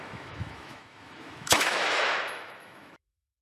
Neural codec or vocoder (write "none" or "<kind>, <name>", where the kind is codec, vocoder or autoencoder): autoencoder, DAC-VAE